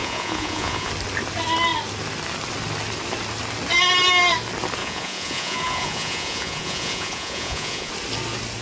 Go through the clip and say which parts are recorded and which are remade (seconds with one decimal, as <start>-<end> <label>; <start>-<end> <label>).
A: 0.0-0.9 remade; 0.9-4.8 recorded; 4.8-7.9 remade; 7.9-8.6 recorded